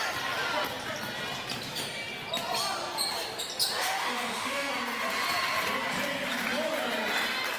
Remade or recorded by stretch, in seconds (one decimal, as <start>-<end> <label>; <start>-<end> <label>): 0.0-3.8 recorded; 3.8-4.7 remade; 4.7-7.6 recorded